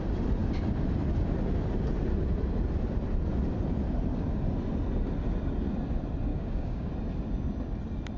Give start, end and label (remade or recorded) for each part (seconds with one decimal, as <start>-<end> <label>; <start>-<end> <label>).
0.0-6.3 recorded; 6.3-6.9 remade; 6.9-8.2 recorded